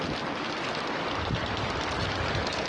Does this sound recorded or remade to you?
recorded